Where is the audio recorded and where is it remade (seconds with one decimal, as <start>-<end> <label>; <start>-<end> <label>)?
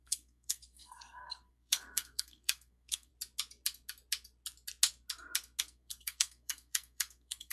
0.0-3.1 remade; 3.1-5.6 recorded; 5.6-7.5 remade